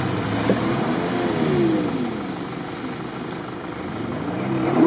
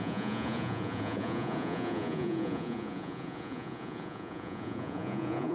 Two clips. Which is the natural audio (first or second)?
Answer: first